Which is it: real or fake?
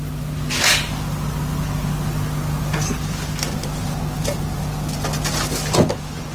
real